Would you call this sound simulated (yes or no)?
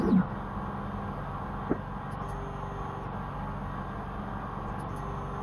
no